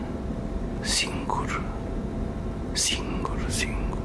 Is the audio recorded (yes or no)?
yes